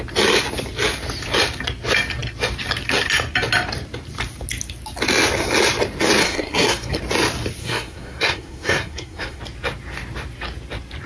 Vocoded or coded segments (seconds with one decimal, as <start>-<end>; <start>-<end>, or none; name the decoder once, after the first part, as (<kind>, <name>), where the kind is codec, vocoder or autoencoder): 6.2-7.0 (codec, SNAC); 7.6-9.4